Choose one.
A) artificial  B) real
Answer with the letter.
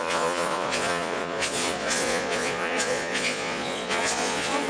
A